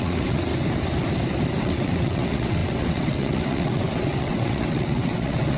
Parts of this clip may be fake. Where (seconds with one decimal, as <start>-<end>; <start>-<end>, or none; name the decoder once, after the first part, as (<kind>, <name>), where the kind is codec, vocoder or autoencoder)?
0.0-0.5 (vocoder, WaveNeXt); 1.6-5.6